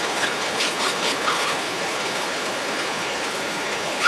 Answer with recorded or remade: remade